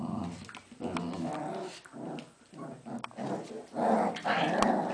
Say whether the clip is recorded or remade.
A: recorded